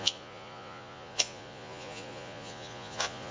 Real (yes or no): no